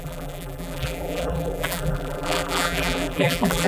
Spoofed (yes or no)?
yes